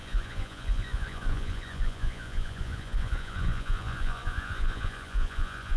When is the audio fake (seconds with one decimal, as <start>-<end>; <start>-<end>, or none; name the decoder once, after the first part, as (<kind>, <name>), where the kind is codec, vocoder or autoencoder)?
0.0-5.8 (vocoder, Vocos)